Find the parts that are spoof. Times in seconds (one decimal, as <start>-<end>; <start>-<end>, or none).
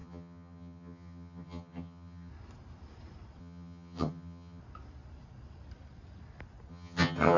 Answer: 0.0-2.3; 3.4-4.6; 6.7-7.4